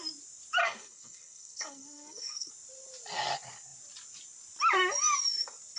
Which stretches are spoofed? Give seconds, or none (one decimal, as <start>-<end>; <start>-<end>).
0.6-2.5